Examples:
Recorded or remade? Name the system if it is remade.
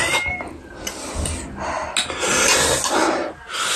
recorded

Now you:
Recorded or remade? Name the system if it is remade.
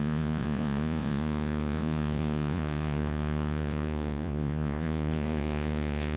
remade, vocoder, Vocos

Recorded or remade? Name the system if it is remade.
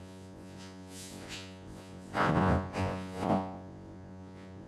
remade, vocoder, Vocos